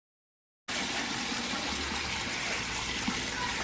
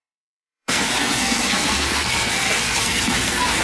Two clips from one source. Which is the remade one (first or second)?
second